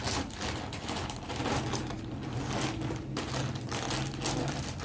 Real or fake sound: real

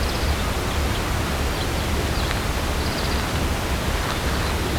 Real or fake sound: real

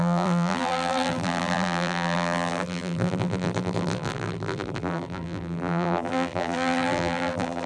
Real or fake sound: fake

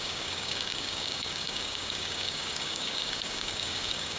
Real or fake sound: fake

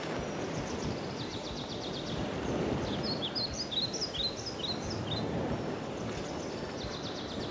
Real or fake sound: real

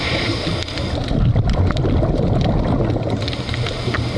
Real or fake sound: real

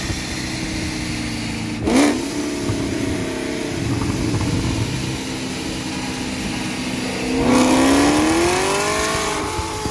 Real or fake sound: real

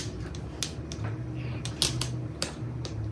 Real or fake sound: real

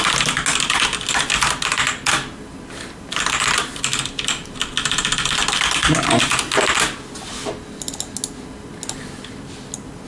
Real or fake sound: real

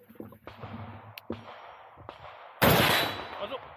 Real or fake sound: real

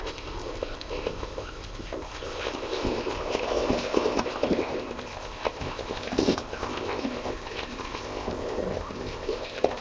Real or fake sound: fake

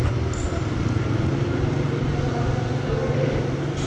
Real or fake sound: real